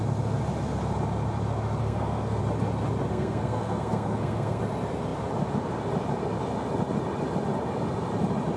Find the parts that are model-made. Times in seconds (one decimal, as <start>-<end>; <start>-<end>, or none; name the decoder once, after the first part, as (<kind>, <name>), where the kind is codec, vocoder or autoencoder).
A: 1.8-2.4 (codec, SNAC); 3.1-4.6

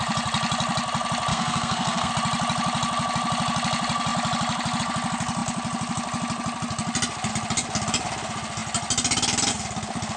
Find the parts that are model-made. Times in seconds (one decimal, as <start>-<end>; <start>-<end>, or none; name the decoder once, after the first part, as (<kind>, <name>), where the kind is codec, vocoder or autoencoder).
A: 1.3-2.1 (codec, SNAC)

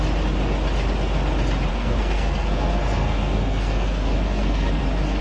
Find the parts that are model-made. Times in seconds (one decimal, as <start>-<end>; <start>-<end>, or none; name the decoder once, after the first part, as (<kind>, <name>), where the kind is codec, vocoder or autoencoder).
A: 1.7-4.8 (codec, SNAC)

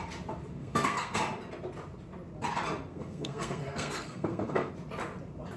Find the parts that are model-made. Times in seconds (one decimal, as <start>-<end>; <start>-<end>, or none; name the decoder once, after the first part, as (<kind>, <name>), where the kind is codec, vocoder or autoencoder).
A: 0.6-1.2 (codec, SNAC); 2.9-4.7

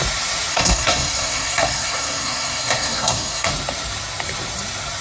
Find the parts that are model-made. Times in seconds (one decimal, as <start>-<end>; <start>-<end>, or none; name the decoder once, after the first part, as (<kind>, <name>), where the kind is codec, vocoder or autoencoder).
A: 0.5-3.5 (codec, SNAC)

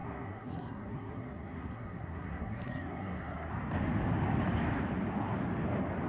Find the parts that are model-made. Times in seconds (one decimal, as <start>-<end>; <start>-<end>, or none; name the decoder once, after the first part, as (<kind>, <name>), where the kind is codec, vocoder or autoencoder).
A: 0.0-3.5 (codec, SNAC)